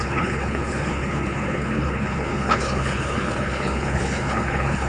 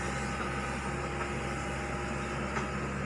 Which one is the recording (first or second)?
second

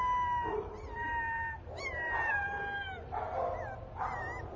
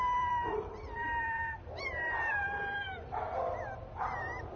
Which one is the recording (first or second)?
first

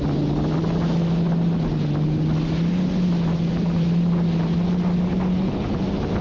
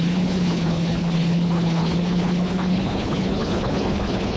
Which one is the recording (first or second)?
first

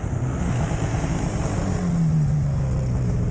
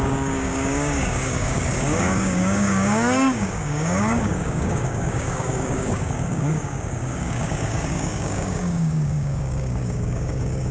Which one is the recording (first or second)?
first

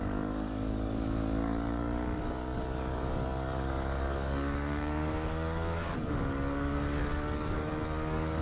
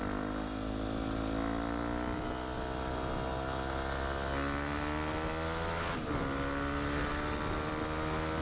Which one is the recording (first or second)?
second